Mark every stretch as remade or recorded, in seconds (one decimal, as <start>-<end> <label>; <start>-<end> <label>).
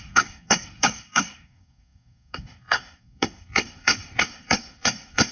0.0-5.3 remade